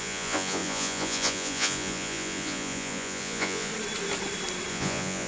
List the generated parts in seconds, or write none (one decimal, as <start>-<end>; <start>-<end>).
0.0-3.7; 4.7-5.3

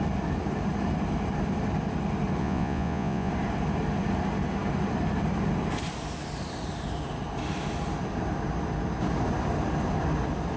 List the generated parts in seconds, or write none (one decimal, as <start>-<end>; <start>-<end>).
2.4-3.3

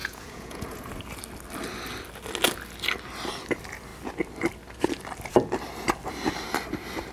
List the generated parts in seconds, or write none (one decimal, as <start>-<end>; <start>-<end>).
0.0-0.9

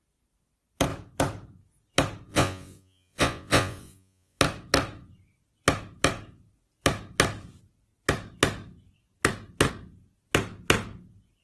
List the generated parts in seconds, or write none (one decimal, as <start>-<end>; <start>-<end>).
2.3-4.4

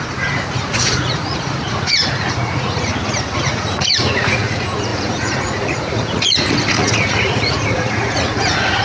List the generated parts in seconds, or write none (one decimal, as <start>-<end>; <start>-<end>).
0.0-2.9; 3.4-8.8

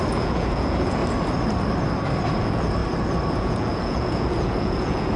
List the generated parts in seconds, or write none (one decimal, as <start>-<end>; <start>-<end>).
0.0-1.0; 2.4-2.8; 3.3-5.2